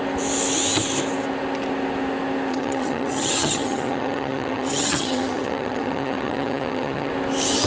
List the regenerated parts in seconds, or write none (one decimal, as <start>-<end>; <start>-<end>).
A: 2.5-7.1